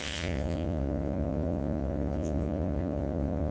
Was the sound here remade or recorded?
remade